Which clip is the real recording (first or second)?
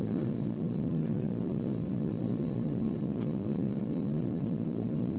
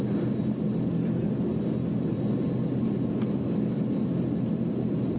second